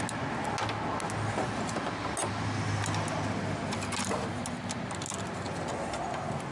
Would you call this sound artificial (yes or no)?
no